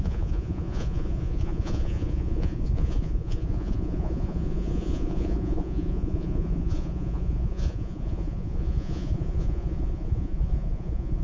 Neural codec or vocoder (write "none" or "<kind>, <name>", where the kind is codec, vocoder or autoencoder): vocoder, Vocos